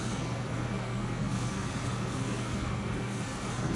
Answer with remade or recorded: remade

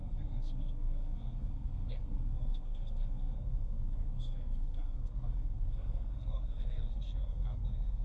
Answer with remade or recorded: remade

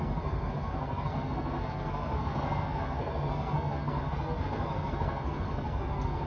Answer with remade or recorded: remade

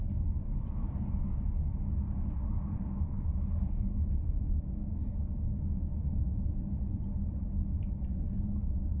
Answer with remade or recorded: recorded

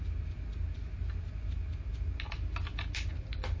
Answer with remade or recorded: recorded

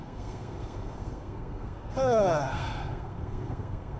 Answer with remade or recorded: remade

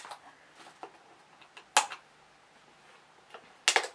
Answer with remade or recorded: recorded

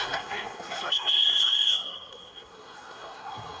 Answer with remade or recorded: remade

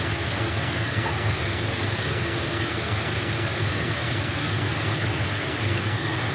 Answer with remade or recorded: remade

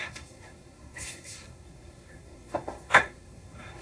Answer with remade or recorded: remade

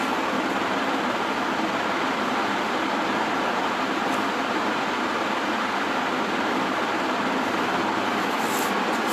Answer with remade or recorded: recorded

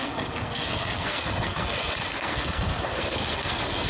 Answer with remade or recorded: remade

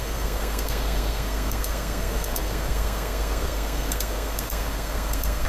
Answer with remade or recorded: remade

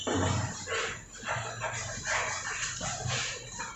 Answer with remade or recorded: recorded